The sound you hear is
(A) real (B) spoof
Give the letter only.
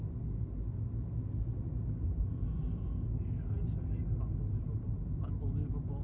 A